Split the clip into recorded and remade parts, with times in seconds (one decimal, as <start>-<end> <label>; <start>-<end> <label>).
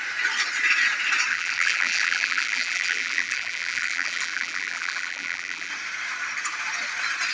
0.0-1.3 recorded; 1.3-5.7 remade; 5.7-7.3 recorded